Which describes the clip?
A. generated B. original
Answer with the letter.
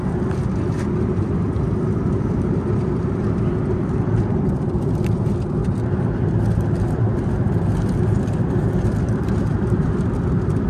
A